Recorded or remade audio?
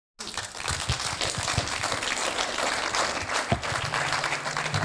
recorded